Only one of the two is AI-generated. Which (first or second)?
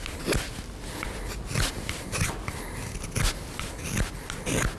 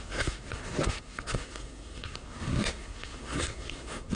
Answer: second